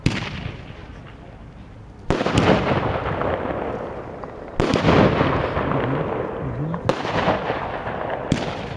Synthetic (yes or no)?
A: no